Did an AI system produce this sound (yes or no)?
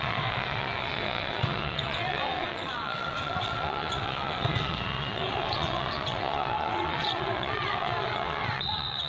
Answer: yes